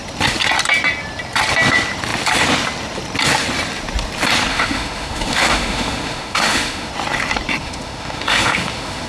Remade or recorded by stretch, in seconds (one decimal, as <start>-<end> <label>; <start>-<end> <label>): 0.0-4.5 recorded; 4.5-6.9 remade; 6.9-7.6 recorded; 7.6-9.1 remade